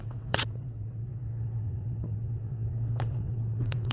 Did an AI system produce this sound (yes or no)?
yes